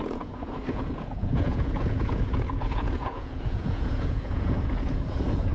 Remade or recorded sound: remade